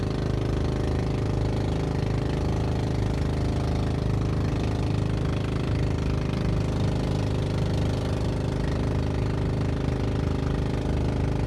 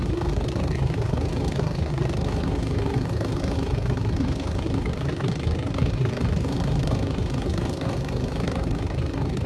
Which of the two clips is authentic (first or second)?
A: first